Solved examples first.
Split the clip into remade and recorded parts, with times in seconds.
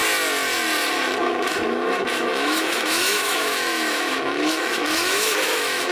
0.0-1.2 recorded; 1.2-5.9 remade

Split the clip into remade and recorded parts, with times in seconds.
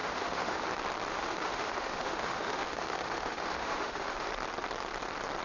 0.0-0.7 remade; 0.7-1.1 recorded; 1.1-4.3 remade; 4.3-5.4 recorded